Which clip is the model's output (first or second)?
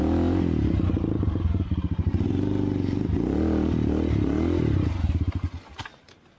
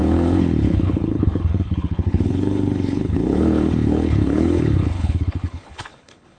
second